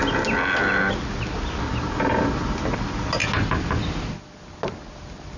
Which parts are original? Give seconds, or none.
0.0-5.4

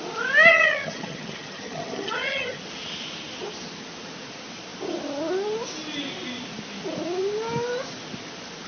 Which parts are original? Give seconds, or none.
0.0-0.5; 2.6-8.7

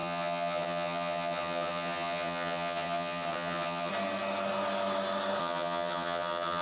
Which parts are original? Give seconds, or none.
3.9-5.4